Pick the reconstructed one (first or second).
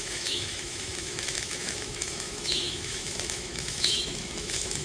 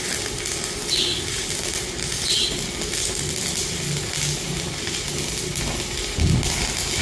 first